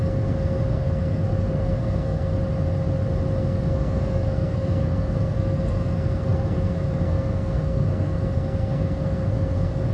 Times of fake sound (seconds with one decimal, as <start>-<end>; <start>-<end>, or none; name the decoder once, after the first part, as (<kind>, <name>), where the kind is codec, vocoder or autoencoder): 0.0-2.3 (codec, SNAC); 3.4-9.9